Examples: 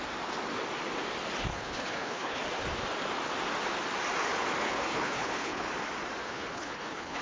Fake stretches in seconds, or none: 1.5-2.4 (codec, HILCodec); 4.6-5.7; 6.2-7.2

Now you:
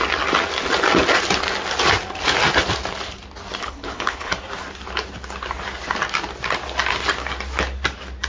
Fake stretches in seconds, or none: 3.6-4.3 (codec, HILCodec)

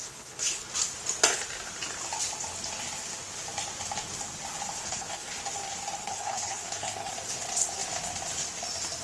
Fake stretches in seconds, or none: 0.0-0.7 (codec, HILCodec); 4.8-5.4; 6.0-7.1

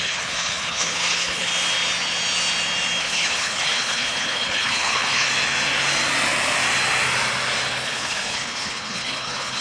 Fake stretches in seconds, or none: 0.0-1.5 (codec, HILCodec); 3.0-5.3; 7.8-9.6

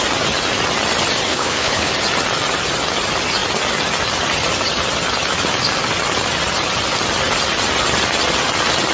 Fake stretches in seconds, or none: 1.3-1.9 (codec, HILCodec)

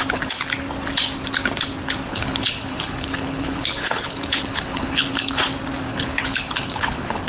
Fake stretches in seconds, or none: 2.1-5.4 (codec, HILCodec); 5.9-7.3